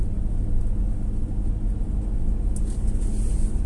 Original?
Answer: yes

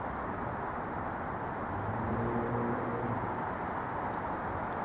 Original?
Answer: yes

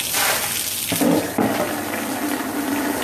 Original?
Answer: yes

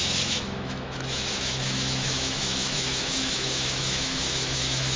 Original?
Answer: no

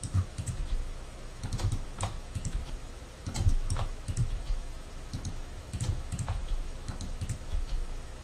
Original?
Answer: no